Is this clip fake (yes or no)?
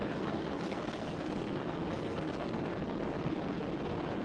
yes